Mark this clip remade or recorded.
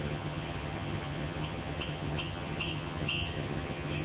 remade